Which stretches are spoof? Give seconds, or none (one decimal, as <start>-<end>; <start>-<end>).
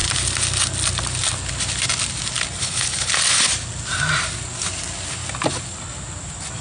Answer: 2.6-3.1